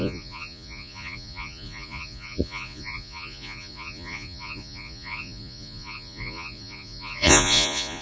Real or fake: fake